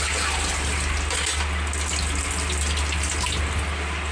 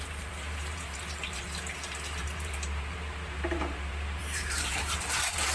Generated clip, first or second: second